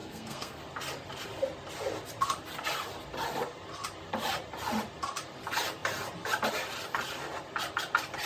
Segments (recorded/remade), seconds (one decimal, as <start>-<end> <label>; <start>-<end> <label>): 0.0-0.6 remade; 0.6-8.3 recorded